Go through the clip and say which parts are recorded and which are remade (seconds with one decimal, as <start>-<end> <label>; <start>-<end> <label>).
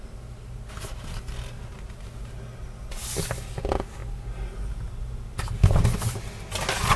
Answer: 0.0-7.0 recorded